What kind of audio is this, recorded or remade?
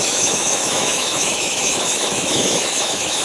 remade